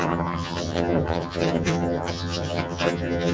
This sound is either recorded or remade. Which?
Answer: remade